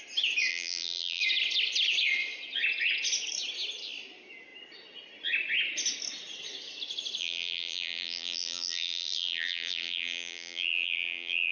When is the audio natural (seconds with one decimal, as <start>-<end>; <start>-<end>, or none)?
0.0-0.5; 1.2-7.2